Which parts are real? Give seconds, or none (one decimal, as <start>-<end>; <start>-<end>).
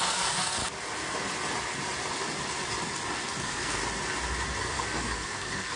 0.6-3.4; 3.8-4.6